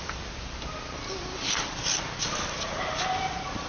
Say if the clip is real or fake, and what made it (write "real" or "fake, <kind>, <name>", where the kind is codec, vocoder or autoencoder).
real